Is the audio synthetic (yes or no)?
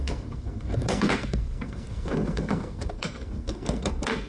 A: yes